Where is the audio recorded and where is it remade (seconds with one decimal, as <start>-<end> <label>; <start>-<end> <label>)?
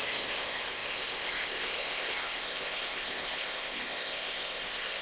0.0-5.0 remade